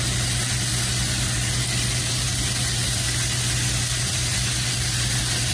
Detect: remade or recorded recorded